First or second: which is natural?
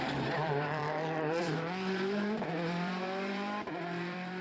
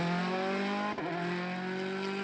second